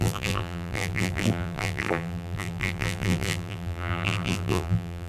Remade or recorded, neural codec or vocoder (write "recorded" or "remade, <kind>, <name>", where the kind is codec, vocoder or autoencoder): remade, vocoder, BigVGAN v2